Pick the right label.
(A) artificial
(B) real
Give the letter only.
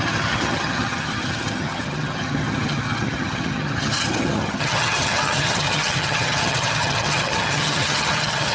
A